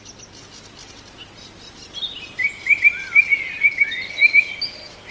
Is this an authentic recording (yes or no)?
yes